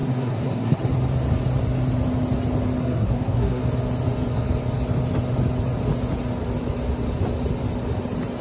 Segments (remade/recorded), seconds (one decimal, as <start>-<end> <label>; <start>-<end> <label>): 0.0-0.8 remade; 0.8-2.8 recorded; 2.8-3.6 remade; 3.6-8.4 recorded